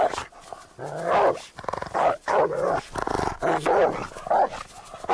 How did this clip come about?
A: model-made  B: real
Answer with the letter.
B